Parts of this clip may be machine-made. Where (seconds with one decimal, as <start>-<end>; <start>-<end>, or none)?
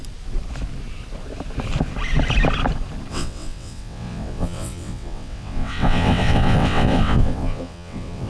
3.1-8.3